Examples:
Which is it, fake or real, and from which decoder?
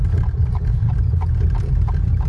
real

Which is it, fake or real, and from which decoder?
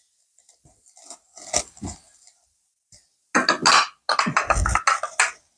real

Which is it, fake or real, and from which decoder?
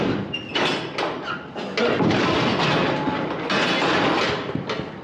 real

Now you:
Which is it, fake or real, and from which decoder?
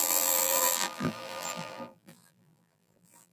fake, vocoder, BigVGAN v2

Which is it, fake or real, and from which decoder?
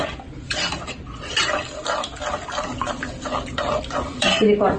real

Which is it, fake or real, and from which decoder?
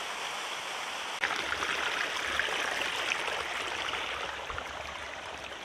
real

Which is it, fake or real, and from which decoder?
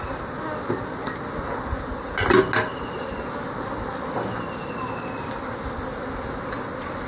real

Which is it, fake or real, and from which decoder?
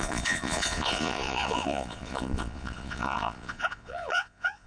fake, vocoder, Vocos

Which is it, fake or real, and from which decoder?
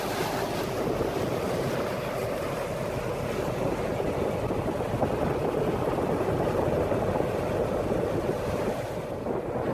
real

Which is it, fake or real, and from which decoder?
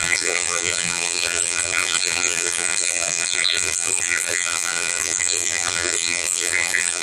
fake, vocoder, BigVGAN v2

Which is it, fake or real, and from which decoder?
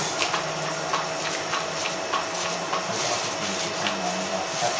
real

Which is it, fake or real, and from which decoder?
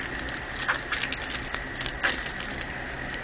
real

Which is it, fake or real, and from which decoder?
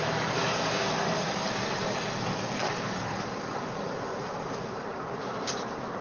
fake, vocoder, BigVGAN v2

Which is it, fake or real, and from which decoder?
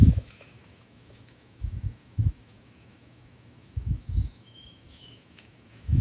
fake, autoencoder, DAC-VAE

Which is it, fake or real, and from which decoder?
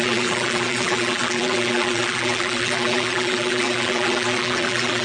fake, vocoder, BigVGAN v2